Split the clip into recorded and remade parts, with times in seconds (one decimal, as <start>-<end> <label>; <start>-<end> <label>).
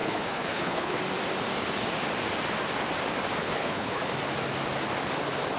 0.0-1.0 remade; 1.0-3.4 recorded; 3.4-4.0 remade; 4.0-5.6 recorded